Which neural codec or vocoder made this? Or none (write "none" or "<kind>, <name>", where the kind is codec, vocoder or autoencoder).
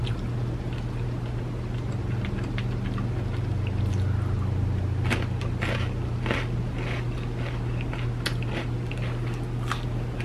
none